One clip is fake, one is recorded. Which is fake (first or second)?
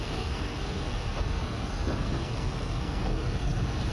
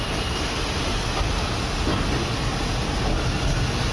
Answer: first